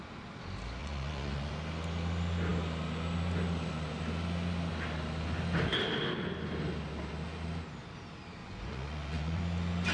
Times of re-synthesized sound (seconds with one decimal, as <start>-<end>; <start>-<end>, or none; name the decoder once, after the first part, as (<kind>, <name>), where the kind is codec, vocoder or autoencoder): 0.8-1.5 (vocoder, Vocos); 8.4-9.4